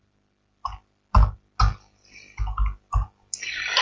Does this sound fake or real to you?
real